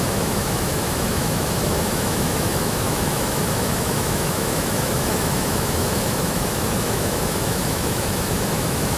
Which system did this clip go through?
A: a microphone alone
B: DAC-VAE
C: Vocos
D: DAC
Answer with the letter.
B